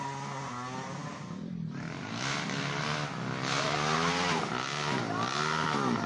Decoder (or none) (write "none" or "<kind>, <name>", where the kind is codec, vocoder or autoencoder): none